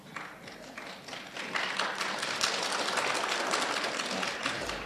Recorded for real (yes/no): yes